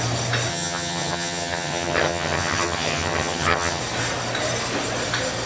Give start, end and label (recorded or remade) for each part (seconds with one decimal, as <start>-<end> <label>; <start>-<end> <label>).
0.0-0.5 recorded; 0.5-3.8 remade; 3.8-5.5 recorded